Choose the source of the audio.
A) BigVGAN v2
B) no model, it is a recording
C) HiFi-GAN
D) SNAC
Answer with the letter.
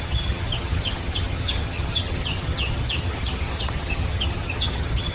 C